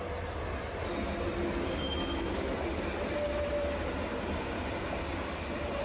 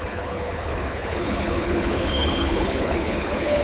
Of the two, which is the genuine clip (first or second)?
first